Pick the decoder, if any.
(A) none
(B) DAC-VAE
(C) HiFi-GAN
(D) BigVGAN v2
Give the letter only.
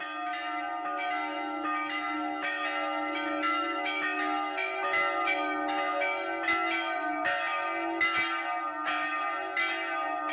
A